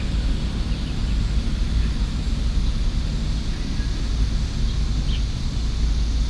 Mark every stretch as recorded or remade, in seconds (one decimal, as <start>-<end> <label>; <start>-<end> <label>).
0.0-6.3 recorded